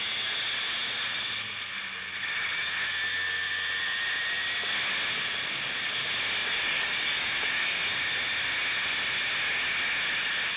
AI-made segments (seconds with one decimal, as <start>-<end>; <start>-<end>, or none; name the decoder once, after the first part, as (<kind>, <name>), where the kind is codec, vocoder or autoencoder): 6.4-7.8 (codec, DAC)